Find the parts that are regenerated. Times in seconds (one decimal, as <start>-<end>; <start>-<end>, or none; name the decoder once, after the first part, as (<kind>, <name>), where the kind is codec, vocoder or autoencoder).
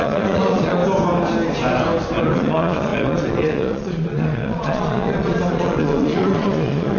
0.0-0.8 (vocoder, Vocos); 2.2-7.0